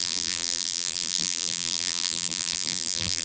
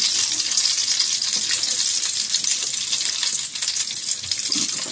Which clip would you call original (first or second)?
second